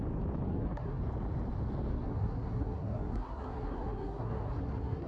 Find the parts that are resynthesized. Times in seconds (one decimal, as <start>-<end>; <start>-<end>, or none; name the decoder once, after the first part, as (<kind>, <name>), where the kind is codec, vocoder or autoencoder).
0.5-1.0 (codec, SNAC); 1.9-5.1

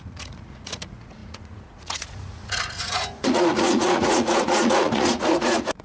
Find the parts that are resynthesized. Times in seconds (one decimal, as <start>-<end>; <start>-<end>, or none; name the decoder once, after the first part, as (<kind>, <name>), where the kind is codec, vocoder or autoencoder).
0.0-5.8 (vocoder, Vocos)

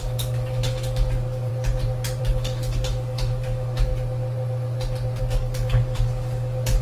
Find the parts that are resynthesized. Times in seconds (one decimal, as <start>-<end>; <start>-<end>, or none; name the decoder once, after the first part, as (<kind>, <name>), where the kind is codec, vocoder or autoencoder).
0.0-1.5 (codec, DAC); 2.2-3.9; 5.2-6.8

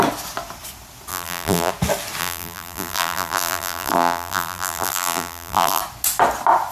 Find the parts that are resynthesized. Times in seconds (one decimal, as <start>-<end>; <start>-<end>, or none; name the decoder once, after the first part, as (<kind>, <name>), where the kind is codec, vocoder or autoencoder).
1.1-1.7 (vocoder, BigVGAN v2); 2.2-5.8

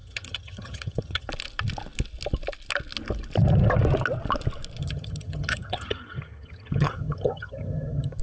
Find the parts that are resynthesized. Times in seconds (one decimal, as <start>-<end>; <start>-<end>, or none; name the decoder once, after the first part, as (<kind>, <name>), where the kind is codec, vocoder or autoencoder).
0.0-1.3 (vocoder, HiFi-GAN); 4.8-8.2

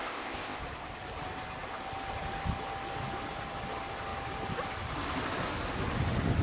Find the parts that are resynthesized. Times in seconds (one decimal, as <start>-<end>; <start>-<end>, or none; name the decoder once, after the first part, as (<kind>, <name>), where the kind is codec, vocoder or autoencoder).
0.0-0.6 (codec, ZipCodec)

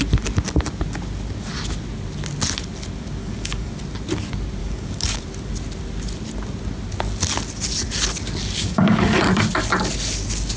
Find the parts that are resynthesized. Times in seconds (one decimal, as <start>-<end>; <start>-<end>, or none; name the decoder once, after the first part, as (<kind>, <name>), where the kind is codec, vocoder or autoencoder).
3.2-3.7 (codec, DAC); 4.6-5.2; 8.6-9.2